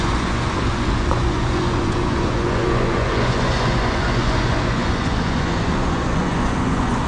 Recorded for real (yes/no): no